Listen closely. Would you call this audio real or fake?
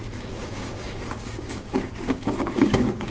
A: fake